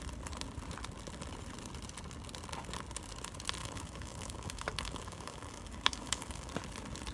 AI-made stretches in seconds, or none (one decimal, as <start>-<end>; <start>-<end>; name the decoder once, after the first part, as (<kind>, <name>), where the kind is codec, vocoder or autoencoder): 3.6-6.5 (codec, DAC)